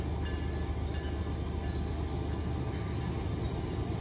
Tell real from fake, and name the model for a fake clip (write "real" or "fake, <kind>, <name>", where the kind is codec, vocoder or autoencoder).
real